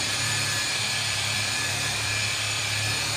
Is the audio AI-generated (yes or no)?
yes